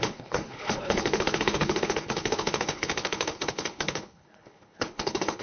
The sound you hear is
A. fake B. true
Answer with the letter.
A